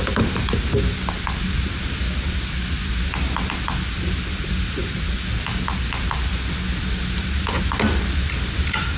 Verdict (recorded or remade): recorded